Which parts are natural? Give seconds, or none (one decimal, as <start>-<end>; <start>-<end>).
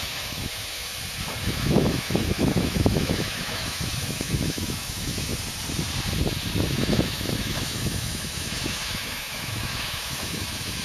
0.9-1.4; 5.3-6.7